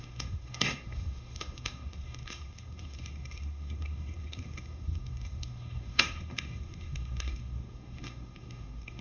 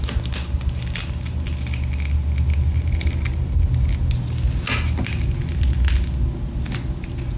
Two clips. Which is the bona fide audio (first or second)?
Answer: second